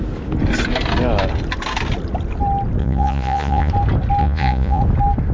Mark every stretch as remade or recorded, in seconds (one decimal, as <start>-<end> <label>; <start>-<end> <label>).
0.0-2.8 recorded; 2.8-3.7 remade; 3.7-4.2 recorded; 4.2-4.8 remade; 4.8-5.3 recorded